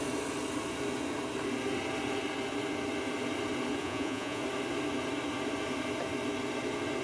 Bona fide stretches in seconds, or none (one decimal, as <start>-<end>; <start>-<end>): 0.0-3.8; 4.4-7.0